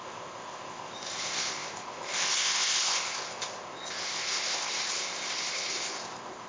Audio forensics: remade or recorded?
remade